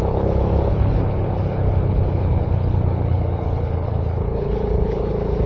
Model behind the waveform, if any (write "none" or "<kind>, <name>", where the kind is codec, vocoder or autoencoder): codec, HILCodec